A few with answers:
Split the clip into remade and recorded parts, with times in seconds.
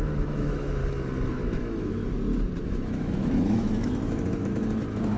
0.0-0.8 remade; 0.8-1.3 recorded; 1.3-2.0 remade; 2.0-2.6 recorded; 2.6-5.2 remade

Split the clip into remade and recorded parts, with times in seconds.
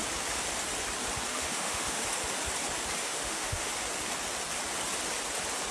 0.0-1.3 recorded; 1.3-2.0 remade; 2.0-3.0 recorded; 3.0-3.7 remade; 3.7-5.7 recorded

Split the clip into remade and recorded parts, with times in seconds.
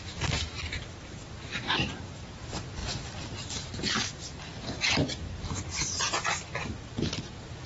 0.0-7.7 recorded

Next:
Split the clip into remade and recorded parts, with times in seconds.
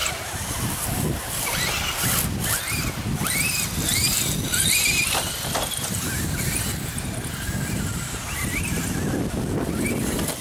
0.0-10.4 recorded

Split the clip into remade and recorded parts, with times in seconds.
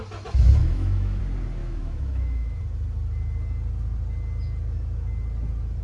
0.0-0.6 recorded; 0.6-1.2 remade; 1.2-1.6 recorded; 1.6-2.6 remade; 2.6-5.8 recorded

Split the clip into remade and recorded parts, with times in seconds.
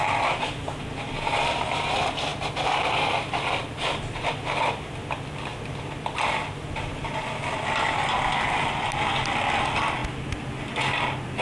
0.0-11.4 recorded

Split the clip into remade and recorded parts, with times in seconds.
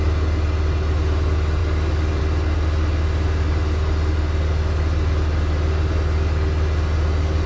0.0-7.5 recorded